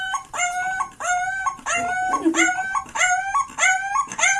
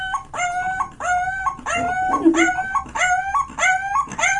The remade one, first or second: first